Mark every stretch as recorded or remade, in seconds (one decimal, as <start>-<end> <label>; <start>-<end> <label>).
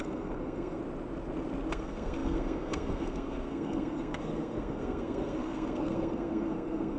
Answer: 0.0-0.8 remade; 0.8-1.7 recorded; 1.7-7.0 remade